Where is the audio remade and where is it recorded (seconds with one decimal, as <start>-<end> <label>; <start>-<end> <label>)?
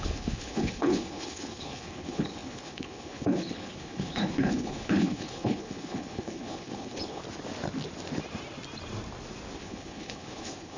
0.0-7.2 remade; 7.2-9.6 recorded; 9.6-10.8 remade